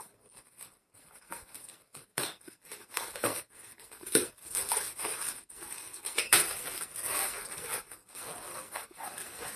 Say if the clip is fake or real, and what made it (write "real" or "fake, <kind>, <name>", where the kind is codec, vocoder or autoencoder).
fake, codec, SNAC